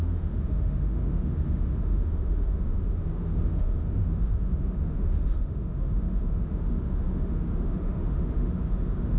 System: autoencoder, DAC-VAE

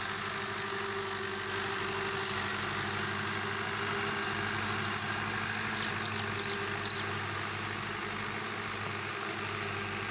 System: none